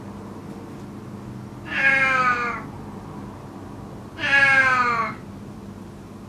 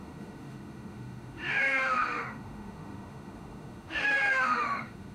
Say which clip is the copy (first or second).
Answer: second